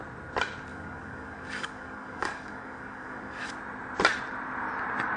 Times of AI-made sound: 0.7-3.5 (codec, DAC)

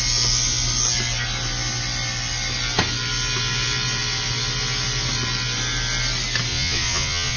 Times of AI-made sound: 6.5-7.4 (vocoder, Vocos)

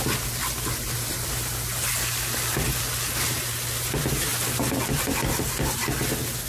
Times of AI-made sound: none

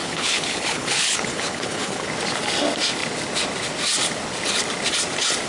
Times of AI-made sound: 0.0-2.1 (codec, HILCodec)